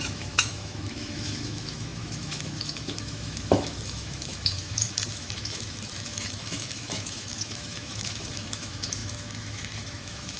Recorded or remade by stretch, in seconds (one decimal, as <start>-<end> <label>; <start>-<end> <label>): 0.0-10.4 remade